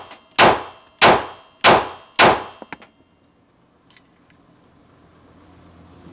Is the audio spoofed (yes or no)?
no